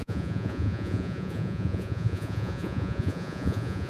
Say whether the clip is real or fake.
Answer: fake